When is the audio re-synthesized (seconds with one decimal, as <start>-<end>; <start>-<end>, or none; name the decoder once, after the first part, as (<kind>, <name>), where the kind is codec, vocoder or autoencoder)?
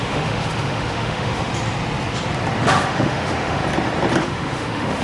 0.0-1.5 (autoencoder, DAC-VAE); 2.6-3.6; 4.2-5.0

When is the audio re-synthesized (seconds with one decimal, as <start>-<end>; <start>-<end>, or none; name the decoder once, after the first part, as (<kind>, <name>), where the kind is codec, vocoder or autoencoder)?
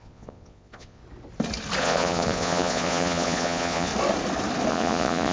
0.0-1.0 (vocoder, Vocos); 1.8-3.9; 4.7-5.3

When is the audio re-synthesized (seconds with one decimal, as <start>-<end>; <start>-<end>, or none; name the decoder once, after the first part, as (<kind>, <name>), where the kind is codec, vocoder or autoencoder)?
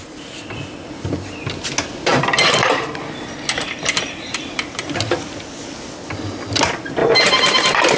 7.0-8.0 (vocoder, BigVGAN v2)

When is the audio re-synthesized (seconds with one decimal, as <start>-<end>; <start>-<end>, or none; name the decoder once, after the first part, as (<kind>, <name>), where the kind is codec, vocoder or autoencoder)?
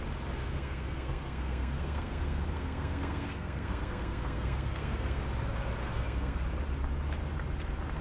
0.4-5.2 (codec, SNAC); 5.8-6.4